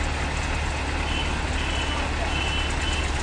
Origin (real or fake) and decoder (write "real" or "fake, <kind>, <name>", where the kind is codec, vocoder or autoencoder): real